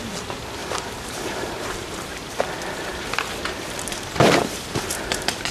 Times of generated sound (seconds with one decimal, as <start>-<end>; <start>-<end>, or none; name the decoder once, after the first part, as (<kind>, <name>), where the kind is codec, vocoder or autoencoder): 0.6-2.1 (vocoder, BigVGAN v2)